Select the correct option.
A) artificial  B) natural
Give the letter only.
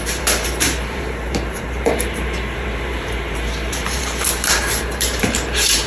A